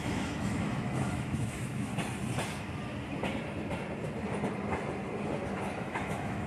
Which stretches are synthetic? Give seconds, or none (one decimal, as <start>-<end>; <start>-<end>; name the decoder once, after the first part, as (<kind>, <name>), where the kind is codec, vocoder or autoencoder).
0.0-1.9 (autoencoder, DAC-VAE); 5.8-6.5